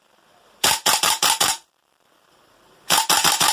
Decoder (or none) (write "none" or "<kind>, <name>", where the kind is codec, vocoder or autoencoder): vocoder, BigVGAN v2